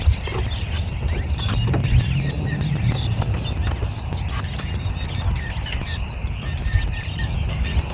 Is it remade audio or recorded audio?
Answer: recorded